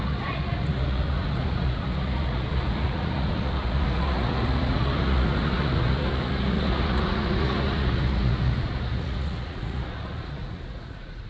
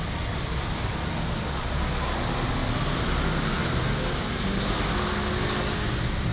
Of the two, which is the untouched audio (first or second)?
second